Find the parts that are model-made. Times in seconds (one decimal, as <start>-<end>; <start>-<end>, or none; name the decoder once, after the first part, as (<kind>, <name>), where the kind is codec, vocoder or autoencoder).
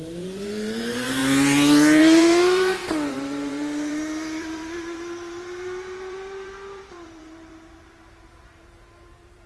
0.0-1.2 (vocoder, BigVGAN v2); 2.0-9.5